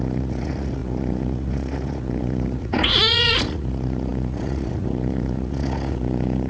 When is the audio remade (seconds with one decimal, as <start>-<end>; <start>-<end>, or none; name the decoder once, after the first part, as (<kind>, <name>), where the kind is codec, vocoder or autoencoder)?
0.0-6.5 (vocoder, Vocos)